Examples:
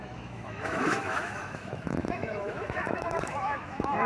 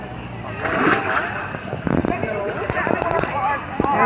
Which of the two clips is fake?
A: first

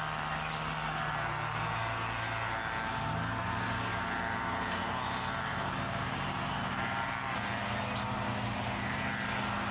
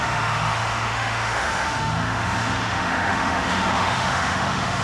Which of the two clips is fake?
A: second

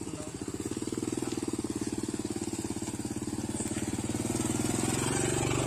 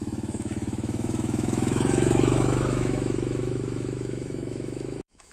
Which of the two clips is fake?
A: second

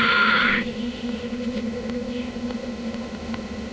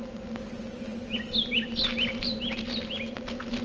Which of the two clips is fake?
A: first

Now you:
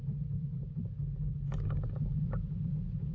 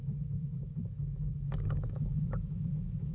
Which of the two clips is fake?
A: second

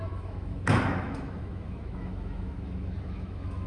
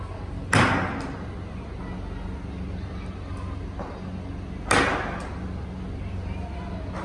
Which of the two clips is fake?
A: first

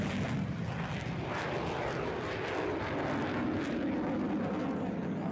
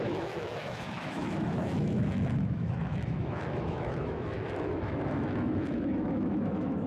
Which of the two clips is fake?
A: second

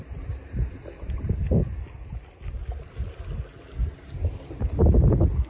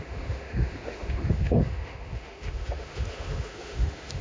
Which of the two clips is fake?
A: second